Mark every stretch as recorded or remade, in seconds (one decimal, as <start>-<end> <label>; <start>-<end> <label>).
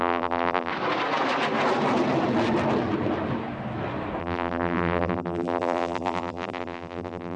0.0-0.7 remade; 0.7-4.2 recorded; 4.2-7.4 remade